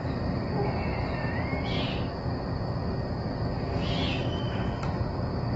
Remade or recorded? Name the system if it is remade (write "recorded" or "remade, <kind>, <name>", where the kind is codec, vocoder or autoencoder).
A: recorded